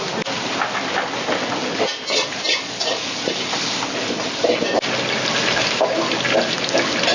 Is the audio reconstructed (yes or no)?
no